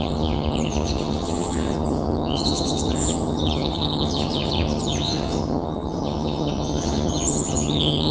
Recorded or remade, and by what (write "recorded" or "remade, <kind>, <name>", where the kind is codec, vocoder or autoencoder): remade, vocoder, HiFi-GAN